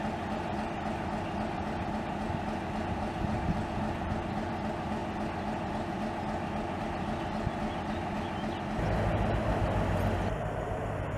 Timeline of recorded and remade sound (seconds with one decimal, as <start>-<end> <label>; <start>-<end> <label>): 0.0-11.2 recorded